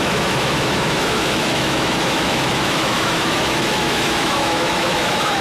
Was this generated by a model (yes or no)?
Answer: yes